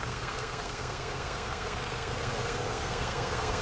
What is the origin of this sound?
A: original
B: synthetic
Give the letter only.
B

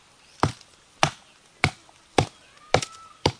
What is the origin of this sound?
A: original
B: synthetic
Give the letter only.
A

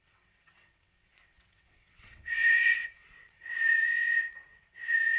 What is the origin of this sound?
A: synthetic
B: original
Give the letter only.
A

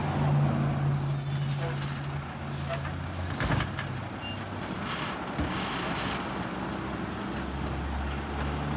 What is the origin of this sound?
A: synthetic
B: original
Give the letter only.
B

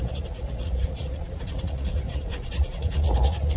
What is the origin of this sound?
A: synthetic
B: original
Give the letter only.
A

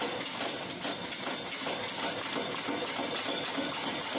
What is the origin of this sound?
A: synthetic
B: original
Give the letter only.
B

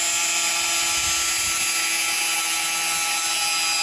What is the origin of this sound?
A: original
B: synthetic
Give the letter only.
A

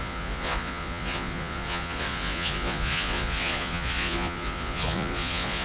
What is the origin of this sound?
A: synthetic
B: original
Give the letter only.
A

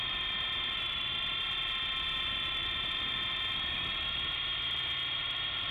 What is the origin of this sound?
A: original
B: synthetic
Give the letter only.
B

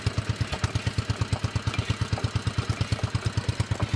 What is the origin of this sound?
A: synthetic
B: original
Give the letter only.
B